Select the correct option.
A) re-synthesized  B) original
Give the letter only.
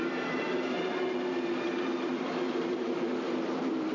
A